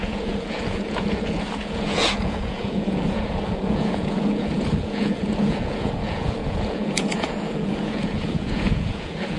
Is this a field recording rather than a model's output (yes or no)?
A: no